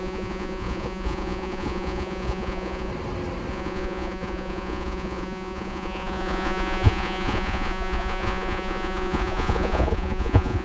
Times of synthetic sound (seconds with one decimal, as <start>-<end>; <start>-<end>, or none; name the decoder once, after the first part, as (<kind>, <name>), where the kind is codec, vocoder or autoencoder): 0.0-2.9 (vocoder, Vocos); 3.5-10.6